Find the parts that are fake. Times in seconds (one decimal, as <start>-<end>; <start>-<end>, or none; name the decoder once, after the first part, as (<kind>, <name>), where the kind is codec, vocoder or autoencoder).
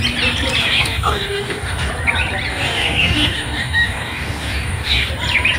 0.6-1.9 (codec, DAC); 2.5-5.1